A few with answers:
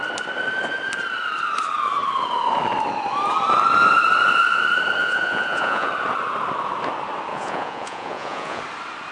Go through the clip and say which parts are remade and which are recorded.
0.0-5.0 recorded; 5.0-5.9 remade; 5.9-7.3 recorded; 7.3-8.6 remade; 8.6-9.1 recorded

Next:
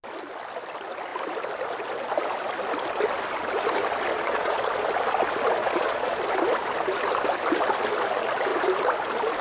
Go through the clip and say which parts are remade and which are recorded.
0.0-4.1 recorded; 4.1-4.7 remade; 4.7-5.6 recorded; 5.6-6.2 remade; 6.2-9.4 recorded

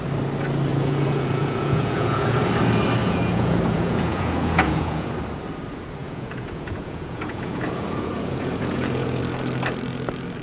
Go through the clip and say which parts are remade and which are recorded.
0.0-0.7 recorded; 0.7-2.5 remade; 2.5-3.0 recorded; 3.0-5.2 remade; 5.2-6.0 recorded; 6.0-9.2 remade; 9.2-10.4 recorded

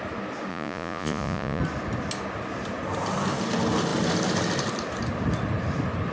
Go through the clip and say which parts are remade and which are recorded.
0.0-0.5 recorded; 0.5-1.6 remade; 1.6-6.1 recorded

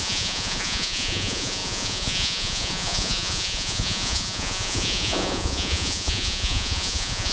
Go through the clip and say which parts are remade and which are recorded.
0.0-7.3 remade

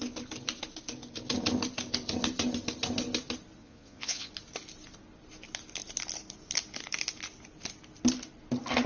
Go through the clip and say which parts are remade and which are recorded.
0.0-3.6 recorded; 3.6-4.3 remade; 4.3-8.9 recorded